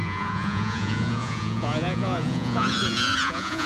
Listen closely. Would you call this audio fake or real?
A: fake